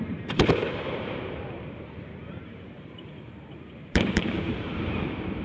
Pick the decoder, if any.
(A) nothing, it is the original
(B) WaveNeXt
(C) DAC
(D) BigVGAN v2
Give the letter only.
D